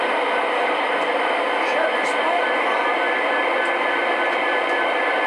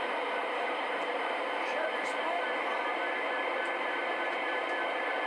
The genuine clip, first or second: first